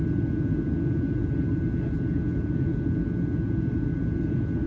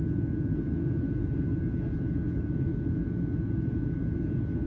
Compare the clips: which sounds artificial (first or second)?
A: second